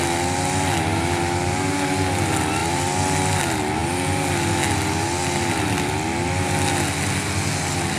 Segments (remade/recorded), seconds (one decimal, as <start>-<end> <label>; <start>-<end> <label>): 0.0-8.0 recorded